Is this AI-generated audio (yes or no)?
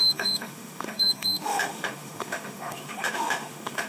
yes